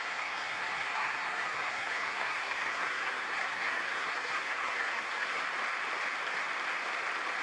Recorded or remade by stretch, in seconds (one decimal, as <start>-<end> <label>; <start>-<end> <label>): 0.0-5.4 remade; 5.4-7.4 recorded